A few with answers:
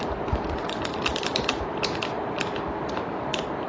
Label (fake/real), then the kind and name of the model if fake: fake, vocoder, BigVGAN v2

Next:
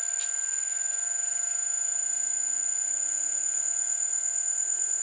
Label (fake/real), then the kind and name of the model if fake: real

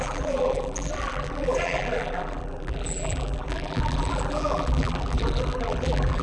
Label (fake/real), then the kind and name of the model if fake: fake, vocoder, BigVGAN v2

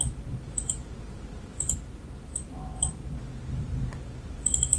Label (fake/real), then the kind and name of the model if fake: fake, vocoder, BigVGAN v2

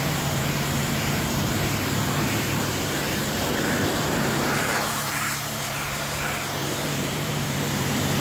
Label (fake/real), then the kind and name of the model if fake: fake, vocoder, BigVGAN v2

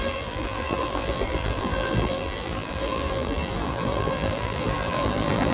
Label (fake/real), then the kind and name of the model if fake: fake, vocoder, BigVGAN v2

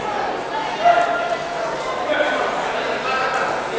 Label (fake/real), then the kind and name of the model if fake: real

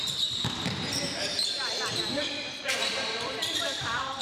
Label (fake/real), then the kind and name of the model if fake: fake, vocoder, BigVGAN v2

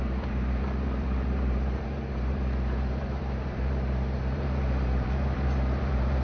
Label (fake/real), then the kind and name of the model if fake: fake, vocoder, BigVGAN v2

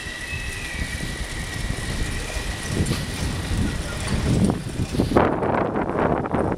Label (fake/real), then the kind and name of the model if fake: fake, vocoder, BigVGAN v2